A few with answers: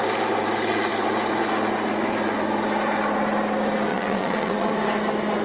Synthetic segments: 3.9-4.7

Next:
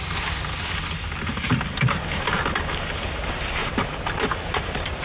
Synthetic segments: 3.6-5.0